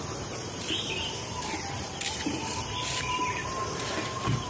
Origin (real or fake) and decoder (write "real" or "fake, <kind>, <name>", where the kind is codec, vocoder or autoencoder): fake, vocoder, BigVGAN v2